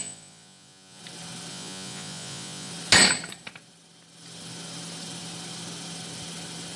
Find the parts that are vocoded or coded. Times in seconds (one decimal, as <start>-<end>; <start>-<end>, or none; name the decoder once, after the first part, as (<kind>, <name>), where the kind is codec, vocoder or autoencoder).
0.0-1.0 (vocoder, Vocos); 1.5-2.7